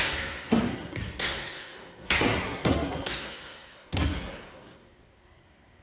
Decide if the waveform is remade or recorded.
remade